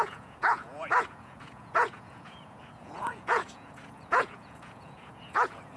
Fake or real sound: fake